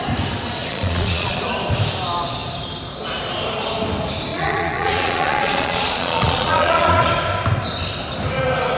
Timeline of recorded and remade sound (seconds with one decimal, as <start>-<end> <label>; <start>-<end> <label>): 0.0-0.7 recorded; 0.7-1.4 remade; 1.4-4.3 recorded; 4.3-7.1 remade; 7.1-8.8 recorded